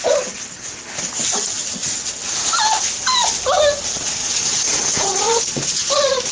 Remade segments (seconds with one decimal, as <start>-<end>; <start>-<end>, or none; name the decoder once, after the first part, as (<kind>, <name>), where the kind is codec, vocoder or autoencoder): 4.2-5.4 (vocoder, Vocos)